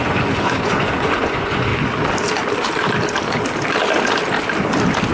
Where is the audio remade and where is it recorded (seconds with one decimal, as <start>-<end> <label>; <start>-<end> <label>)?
0.0-1.7 remade; 1.7-5.1 recorded